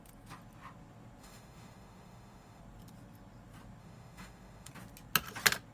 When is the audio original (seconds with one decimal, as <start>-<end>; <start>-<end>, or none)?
0.0-1.2; 2.6-3.8; 4.7-5.7